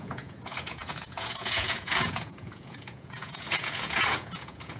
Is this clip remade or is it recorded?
remade